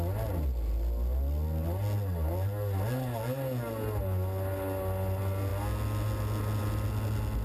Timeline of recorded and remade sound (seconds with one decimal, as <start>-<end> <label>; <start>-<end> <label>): 0.0-7.4 recorded

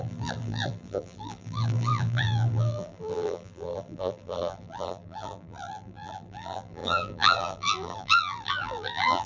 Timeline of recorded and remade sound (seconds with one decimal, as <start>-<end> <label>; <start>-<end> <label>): 0.0-9.3 remade

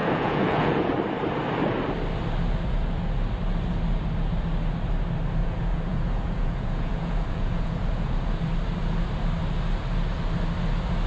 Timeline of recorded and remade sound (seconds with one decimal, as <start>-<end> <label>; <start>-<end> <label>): 0.0-0.9 remade; 0.9-5.4 recorded; 5.4-8.4 remade; 8.4-11.1 recorded